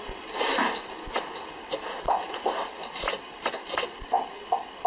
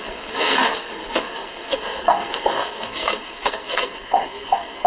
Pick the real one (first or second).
first